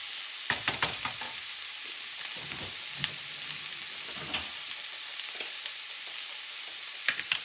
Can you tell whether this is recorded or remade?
recorded